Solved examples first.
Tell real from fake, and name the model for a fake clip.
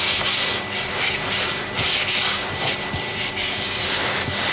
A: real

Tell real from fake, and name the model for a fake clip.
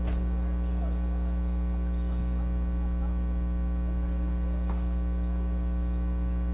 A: real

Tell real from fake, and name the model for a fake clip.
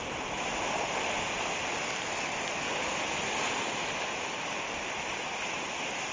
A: real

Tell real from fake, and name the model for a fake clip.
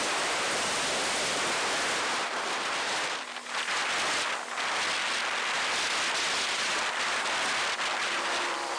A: real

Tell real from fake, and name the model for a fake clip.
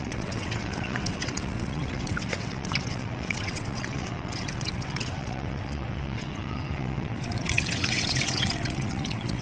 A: fake, vocoder, WaveNeXt